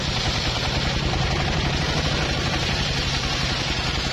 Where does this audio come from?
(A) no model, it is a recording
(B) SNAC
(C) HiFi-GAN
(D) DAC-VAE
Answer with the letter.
A